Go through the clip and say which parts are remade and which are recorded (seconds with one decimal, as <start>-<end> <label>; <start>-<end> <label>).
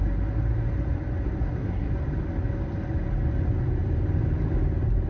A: 0.0-1.4 recorded; 1.4-1.9 remade; 1.9-5.1 recorded